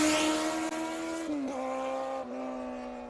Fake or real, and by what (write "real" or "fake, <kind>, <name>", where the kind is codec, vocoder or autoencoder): real